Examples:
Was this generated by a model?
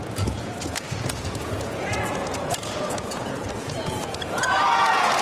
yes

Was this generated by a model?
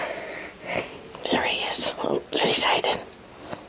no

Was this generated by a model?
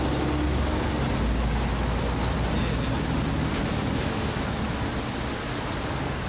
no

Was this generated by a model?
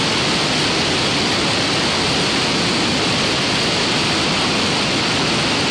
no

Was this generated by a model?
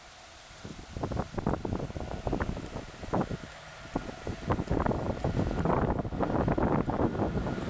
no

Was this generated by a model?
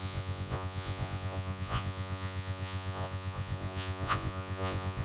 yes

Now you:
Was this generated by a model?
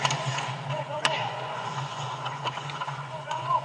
yes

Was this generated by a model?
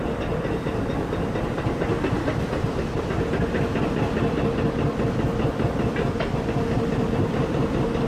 no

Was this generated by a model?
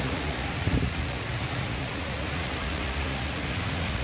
yes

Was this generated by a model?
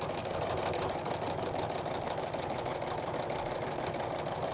no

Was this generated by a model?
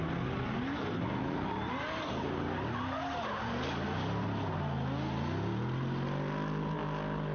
no